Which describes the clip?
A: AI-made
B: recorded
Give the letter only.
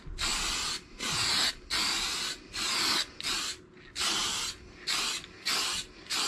B